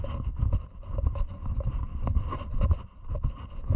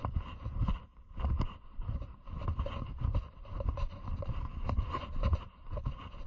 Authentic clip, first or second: first